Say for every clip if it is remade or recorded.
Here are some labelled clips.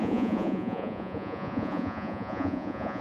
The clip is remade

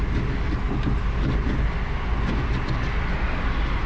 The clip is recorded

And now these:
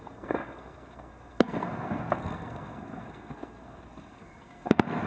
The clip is remade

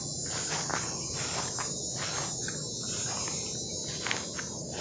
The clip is recorded